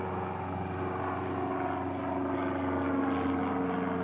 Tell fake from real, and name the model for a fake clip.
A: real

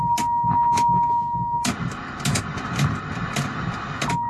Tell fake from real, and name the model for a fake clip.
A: real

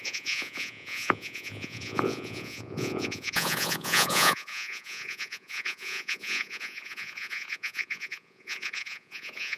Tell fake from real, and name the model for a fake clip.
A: fake, vocoder, Vocos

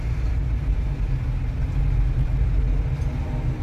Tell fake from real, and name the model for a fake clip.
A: real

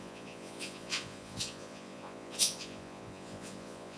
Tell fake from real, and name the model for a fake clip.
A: fake, vocoder, Vocos